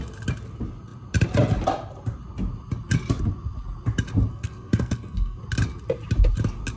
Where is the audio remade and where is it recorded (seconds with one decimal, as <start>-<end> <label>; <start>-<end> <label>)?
0.0-4.3 recorded; 4.3-5.4 remade; 5.4-6.8 recorded